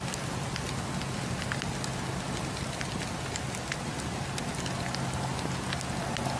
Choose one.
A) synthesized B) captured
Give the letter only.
B